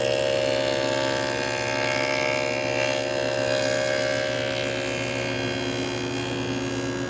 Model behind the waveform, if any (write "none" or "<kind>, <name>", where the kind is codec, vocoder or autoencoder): none